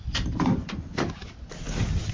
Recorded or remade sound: recorded